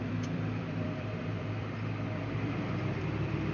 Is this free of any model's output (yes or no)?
no